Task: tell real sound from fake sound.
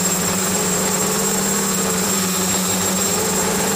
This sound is fake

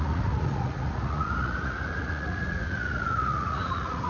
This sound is fake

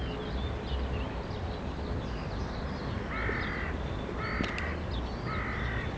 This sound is real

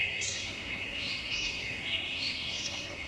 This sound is fake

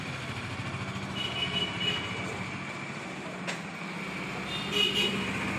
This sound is real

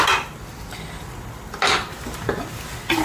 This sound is real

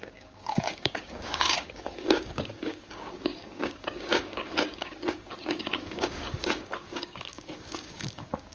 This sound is fake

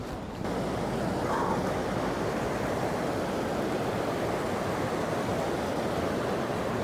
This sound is real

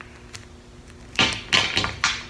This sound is real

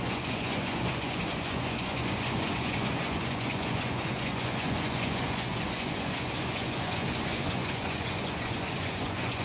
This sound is fake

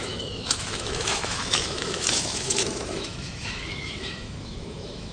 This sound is fake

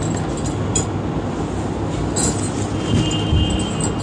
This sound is real